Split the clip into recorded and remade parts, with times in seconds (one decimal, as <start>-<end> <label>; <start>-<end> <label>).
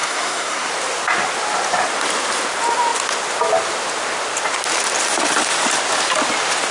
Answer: 0.0-0.7 remade; 0.7-6.7 recorded